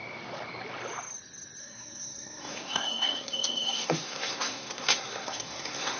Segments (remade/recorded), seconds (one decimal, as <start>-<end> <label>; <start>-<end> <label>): 0.0-1.6 recorded; 1.6-6.0 remade